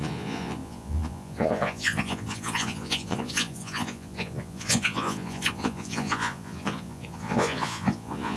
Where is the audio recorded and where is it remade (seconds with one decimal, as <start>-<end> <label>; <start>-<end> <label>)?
0.0-8.4 remade